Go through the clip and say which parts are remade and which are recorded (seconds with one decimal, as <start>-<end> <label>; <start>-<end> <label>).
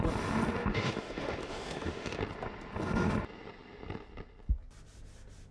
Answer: 0.0-0.6 recorded; 0.6-2.2 remade; 2.2-5.5 recorded